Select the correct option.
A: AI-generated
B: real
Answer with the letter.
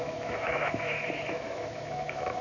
A